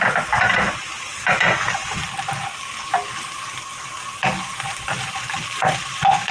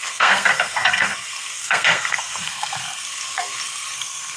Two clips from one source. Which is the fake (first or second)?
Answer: second